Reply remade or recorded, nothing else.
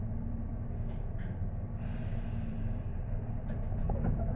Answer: remade